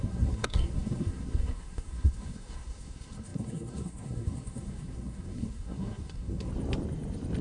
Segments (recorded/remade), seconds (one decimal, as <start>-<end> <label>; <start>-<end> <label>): 0.0-6.5 remade; 6.5-7.4 recorded